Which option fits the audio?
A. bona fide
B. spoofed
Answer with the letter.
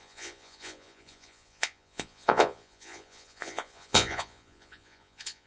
B